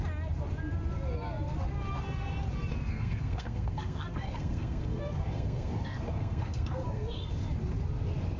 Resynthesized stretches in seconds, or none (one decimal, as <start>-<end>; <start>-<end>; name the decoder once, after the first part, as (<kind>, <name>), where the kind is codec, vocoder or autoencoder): 2.7-7.3 (codec, SNAC)